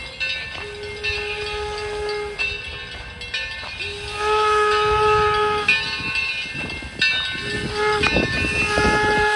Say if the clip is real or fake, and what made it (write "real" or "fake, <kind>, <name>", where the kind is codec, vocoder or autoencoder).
real